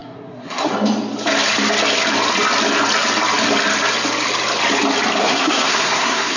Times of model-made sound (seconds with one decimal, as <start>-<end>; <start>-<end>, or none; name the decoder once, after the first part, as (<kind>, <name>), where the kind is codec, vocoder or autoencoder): 0.0-0.7 (codec, SNAC); 5.2-6.4